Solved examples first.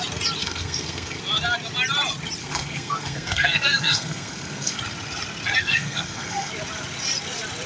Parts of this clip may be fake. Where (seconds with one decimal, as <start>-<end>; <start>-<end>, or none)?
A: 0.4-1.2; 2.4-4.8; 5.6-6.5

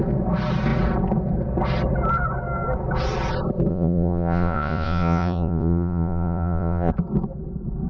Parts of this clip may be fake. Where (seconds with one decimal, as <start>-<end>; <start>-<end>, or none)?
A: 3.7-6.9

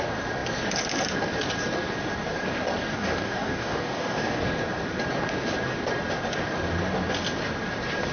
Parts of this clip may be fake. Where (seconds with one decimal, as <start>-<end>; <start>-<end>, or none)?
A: 2.9-4.4